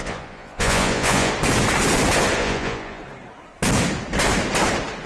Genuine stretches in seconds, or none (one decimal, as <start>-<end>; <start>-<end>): 1.3-2.4; 3.0-5.1